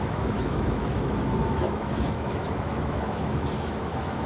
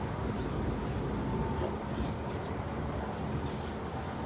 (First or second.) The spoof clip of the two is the first